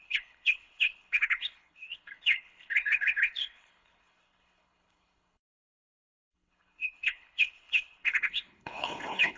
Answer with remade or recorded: remade